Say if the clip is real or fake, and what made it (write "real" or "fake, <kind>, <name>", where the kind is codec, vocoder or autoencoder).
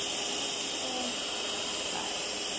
real